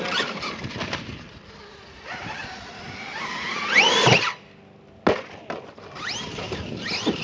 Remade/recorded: recorded